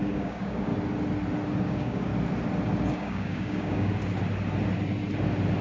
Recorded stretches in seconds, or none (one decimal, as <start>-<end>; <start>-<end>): 0.7-1.6; 2.1-2.9; 3.9-5.6